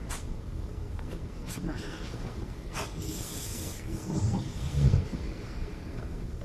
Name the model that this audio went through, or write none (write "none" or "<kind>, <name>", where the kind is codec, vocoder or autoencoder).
codec, SNAC